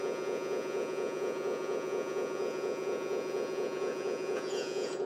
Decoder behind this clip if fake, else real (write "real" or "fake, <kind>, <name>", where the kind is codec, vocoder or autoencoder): fake, vocoder, Vocos